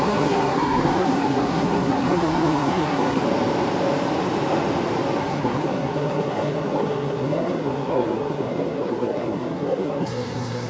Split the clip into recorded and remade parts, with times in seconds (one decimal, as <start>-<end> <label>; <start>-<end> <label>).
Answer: 0.0-3.2 remade; 3.2-5.2 recorded; 5.2-10.7 remade